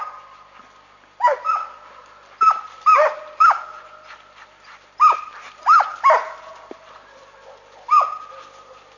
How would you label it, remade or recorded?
recorded